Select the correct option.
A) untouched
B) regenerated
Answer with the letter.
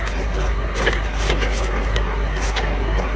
B